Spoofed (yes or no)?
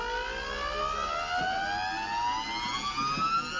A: no